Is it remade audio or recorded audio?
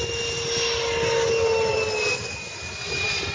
recorded